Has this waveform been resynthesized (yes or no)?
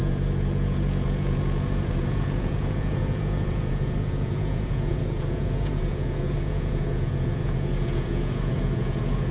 yes